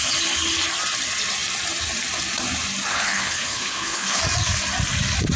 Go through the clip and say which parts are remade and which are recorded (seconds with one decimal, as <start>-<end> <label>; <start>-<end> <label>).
0.0-2.9 recorded; 2.9-4.2 remade; 4.2-5.4 recorded